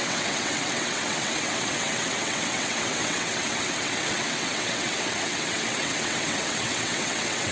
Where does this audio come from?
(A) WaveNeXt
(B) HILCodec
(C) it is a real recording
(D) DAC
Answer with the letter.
A